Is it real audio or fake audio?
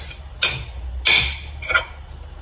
real